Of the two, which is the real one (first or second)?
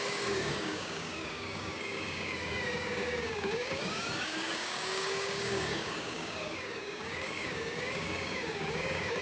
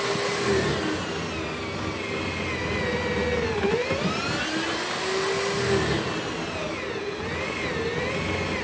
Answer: second